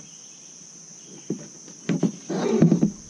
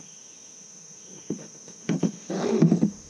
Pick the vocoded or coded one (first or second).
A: second